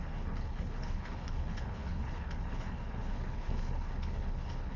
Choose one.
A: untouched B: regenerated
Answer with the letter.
B